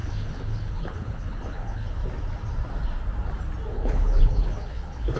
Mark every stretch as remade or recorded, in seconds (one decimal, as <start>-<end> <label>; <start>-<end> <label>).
0.0-2.0 remade; 2.0-3.7 recorded; 3.7-5.2 remade